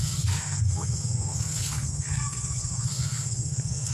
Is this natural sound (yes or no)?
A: no